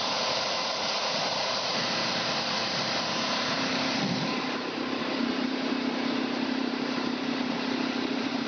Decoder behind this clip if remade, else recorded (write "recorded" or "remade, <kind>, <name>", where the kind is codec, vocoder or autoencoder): remade, vocoder, BigVGAN v2